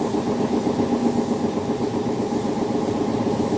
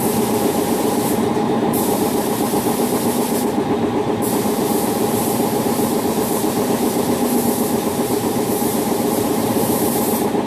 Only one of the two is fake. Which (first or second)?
second